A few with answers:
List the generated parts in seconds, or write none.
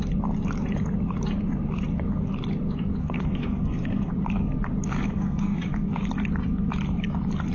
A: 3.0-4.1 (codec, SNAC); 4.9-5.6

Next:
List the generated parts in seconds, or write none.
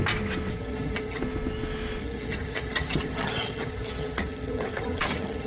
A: 0.5-1.2 (vocoder, HiFi-GAN); 2.0-5.5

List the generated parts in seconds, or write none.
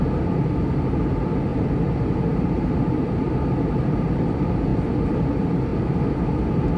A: 1.5-4.1 (vocoder, BigVGAN v2); 4.7-5.2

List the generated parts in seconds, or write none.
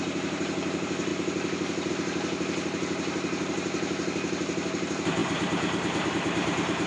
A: 0.0-1.1 (vocoder, BigVGAN v2); 1.9-6.9